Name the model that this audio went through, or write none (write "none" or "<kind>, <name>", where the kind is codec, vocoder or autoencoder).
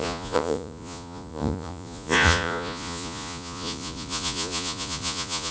vocoder, Vocos